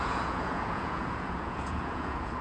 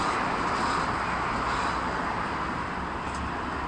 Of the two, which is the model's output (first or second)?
first